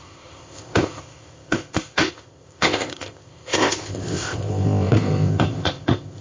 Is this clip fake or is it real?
fake